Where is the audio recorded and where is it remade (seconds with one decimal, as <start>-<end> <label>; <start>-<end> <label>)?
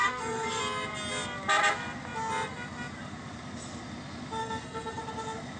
0.0-0.6 remade; 0.6-4.4 recorded; 4.4-5.0 remade; 5.0-5.6 recorded